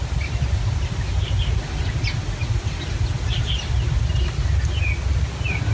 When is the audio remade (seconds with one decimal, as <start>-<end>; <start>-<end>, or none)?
none